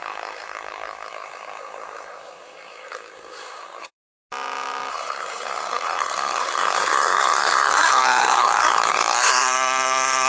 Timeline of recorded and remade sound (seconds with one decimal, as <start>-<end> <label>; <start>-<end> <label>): 0.0-4.0 remade; 4.0-4.9 recorded; 4.9-10.3 remade